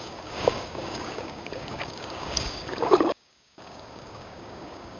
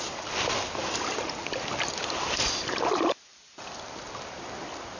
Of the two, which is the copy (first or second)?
first